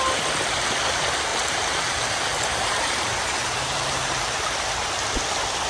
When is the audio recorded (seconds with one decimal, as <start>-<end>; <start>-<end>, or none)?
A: 0.0-1.3; 4.7-5.7